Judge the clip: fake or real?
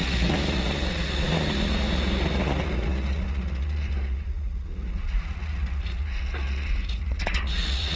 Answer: fake